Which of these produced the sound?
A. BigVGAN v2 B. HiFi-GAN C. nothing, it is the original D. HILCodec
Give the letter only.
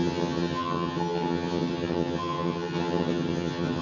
B